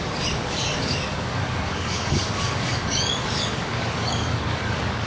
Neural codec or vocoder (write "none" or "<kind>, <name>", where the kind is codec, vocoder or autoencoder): codec, DAC